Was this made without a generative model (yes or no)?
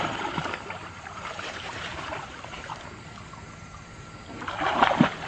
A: no